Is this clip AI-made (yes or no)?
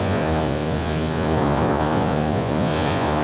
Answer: yes